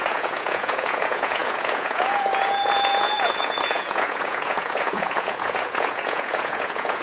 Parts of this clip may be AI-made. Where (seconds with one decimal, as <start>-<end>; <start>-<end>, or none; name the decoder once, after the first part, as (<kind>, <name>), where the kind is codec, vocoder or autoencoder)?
0.0-7.0 (vocoder, Vocos)